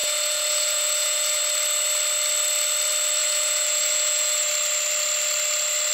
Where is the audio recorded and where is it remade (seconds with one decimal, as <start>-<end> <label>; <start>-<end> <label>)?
0.0-1.4 remade; 1.4-3.2 recorded; 3.2-4.5 remade; 4.5-5.9 recorded